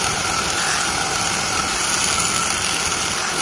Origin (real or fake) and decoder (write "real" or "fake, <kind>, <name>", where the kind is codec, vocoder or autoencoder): real